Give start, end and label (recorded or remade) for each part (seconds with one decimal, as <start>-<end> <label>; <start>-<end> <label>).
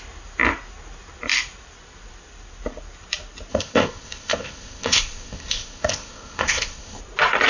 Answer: 0.0-3.5 recorded; 3.5-7.0 remade; 7.0-7.5 recorded